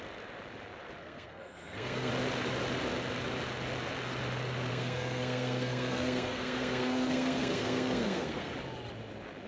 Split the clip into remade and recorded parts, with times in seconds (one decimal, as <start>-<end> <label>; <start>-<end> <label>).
0.0-1.0 recorded; 1.0-2.1 remade; 2.1-4.7 recorded; 4.7-8.5 remade; 8.5-9.5 recorded